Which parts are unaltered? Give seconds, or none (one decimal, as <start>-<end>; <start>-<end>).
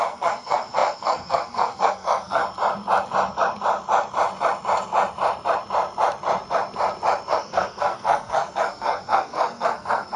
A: 2.4-7.3